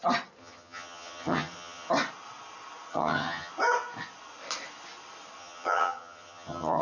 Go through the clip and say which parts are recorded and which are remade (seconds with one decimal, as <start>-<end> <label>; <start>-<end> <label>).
0.0-0.4 recorded; 0.4-1.9 remade; 1.9-2.9 recorded; 2.9-3.5 remade; 3.5-5.4 recorded; 5.4-6.8 remade